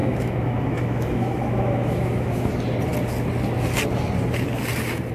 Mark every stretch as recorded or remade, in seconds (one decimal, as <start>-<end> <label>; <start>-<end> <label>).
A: 0.0-2.5 remade; 2.5-5.1 recorded